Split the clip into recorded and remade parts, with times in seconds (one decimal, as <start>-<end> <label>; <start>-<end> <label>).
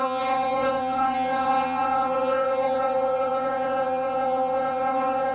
0.0-5.3 remade